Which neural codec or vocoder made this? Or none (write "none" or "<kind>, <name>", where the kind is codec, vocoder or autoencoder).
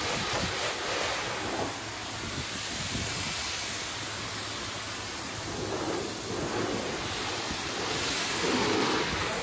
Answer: none